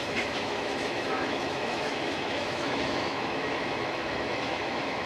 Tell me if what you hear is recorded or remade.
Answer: remade